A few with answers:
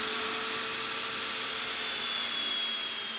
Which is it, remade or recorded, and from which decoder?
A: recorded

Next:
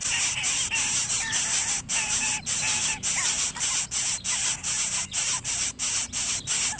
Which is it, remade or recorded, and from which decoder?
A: recorded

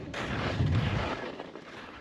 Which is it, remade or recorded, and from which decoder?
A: recorded